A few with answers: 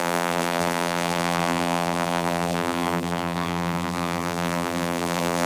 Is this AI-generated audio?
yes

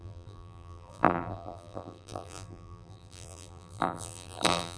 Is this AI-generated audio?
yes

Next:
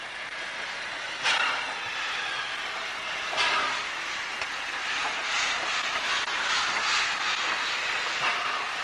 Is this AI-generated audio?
no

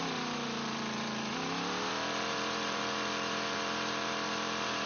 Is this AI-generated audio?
yes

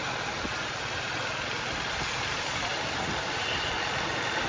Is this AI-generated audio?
yes